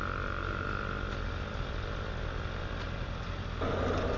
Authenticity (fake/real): real